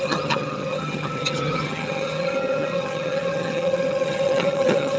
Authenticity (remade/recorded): remade